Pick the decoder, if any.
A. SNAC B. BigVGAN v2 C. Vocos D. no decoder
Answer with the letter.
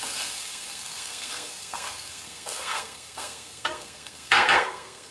A